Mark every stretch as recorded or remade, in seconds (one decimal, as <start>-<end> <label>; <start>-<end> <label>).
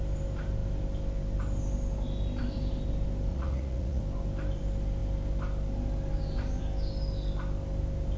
0.0-3.3 recorded; 3.3-4.0 remade; 4.0-8.2 recorded